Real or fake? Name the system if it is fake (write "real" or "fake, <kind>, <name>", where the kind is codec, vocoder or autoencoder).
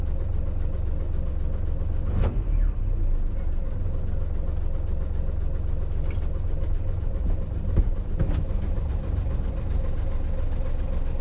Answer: real